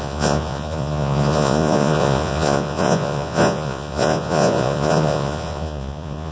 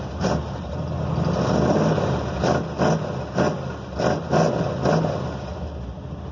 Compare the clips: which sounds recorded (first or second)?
second